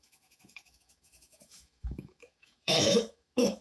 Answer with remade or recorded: remade